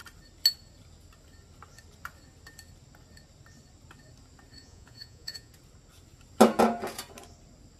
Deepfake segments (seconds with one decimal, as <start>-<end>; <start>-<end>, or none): 4.6-5.5